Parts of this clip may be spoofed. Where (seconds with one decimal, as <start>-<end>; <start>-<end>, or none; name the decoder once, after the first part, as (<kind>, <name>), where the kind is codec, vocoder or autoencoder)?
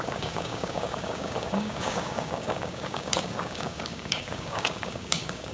0.0-5.5 (codec, DAC)